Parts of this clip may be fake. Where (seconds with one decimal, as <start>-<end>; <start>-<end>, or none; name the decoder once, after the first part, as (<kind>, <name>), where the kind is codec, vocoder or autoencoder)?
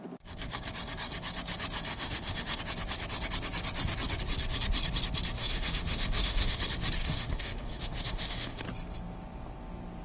1.9-2.6 (autoencoder, DAC-VAE); 5.4-6.6; 7.0-8.6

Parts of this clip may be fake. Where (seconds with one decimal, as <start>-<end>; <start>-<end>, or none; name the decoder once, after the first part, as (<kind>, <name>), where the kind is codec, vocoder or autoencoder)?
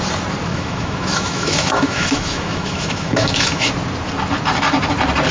0.5-3.7 (autoencoder, DAC-VAE)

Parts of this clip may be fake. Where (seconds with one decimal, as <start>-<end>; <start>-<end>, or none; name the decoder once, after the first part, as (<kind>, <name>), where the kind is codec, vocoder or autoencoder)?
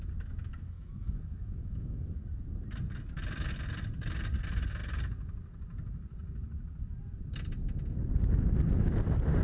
0.5-2.0 (autoencoder, DAC-VAE)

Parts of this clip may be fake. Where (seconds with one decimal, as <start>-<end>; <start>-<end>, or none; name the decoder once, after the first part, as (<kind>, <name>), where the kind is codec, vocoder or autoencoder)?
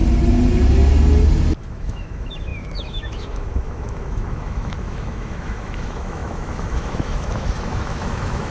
1.6-8.5 (autoencoder, DAC-VAE)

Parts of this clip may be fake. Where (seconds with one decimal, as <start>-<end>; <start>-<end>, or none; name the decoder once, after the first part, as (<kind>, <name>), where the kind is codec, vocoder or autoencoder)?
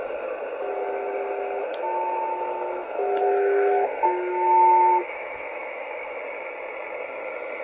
1.6-6.2 (autoencoder, DAC-VAE)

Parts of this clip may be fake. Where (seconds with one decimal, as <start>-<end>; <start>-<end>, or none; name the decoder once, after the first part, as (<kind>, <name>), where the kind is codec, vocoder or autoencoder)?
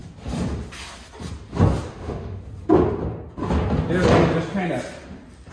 1.9-2.4 (autoencoder, DAC-VAE)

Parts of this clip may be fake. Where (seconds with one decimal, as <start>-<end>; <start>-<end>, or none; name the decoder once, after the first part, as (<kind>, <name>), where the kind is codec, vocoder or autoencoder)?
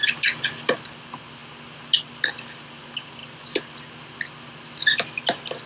none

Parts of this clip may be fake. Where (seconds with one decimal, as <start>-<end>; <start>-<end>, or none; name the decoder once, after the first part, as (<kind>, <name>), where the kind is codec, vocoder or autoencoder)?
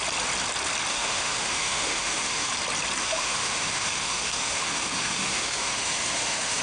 0.9-2.5 (autoencoder, DAC-VAE); 3.0-6.6